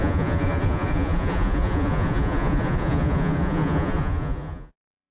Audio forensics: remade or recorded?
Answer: remade